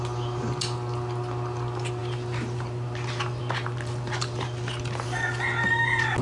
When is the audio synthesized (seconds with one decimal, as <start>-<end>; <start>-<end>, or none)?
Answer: none